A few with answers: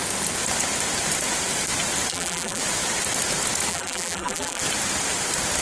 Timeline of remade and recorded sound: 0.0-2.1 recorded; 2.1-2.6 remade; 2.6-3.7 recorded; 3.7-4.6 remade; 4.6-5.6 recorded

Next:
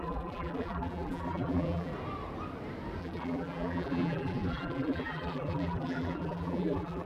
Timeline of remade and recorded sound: 0.0-1.9 remade; 1.9-3.0 recorded; 3.0-7.1 remade

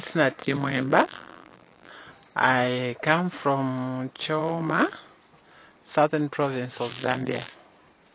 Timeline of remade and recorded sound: 0.0-0.4 recorded; 0.4-1.9 remade; 1.9-4.4 recorded; 4.4-4.9 remade; 4.9-6.9 recorded; 6.9-7.5 remade; 7.5-8.1 recorded

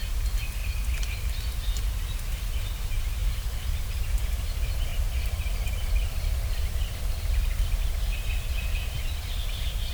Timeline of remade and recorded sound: 0.0-0.6 recorded; 0.6-1.4 remade; 1.4-3.2 recorded; 3.2-4.0 remade; 4.0-4.9 recorded; 4.9-9.3 remade; 9.3-9.9 recorded

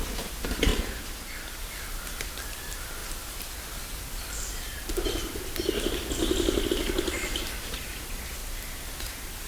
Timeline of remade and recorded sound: 0.0-8.4 recorded; 8.4-9.5 remade